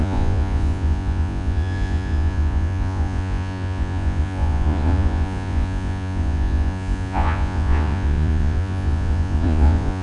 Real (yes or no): no